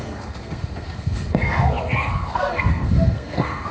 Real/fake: fake